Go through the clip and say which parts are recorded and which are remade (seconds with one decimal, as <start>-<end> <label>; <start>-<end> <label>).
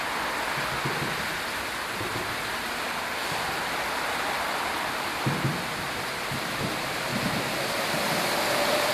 0.0-7.1 recorded; 7.1-8.9 remade